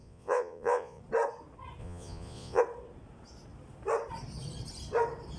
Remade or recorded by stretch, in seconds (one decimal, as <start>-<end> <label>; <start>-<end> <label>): 0.0-1.0 remade; 1.0-1.8 recorded; 1.8-2.6 remade; 2.6-5.4 recorded